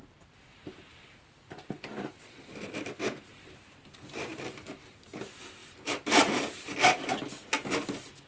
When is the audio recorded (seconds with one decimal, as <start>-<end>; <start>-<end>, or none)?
0.0-0.9; 2.8-4.3; 5.0-5.6; 7.5-8.3